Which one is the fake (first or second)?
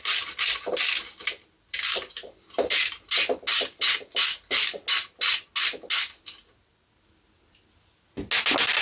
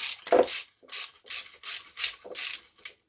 second